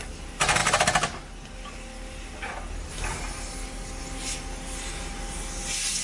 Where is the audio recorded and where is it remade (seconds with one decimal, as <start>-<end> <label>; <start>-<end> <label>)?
0.0-6.0 recorded